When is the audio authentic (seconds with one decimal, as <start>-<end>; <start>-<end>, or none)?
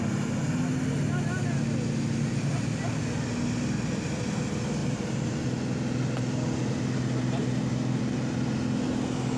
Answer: 0.0-4.8; 5.4-9.4